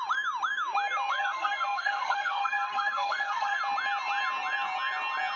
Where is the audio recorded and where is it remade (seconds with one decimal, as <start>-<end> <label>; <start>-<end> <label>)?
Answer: 0.0-1.1 recorded; 1.1-3.6 remade; 3.6-5.4 recorded